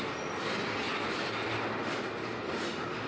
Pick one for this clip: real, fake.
real